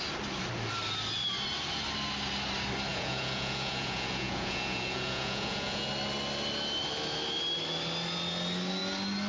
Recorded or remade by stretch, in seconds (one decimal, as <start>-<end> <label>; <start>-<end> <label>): 0.0-2.9 recorded; 2.9-5.9 remade; 5.9-9.3 recorded